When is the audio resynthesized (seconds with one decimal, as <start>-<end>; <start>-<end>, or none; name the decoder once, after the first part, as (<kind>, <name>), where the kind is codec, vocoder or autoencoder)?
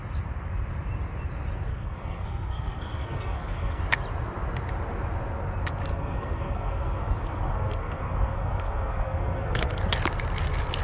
1.7-3.8 (codec, SNAC); 5.9-9.8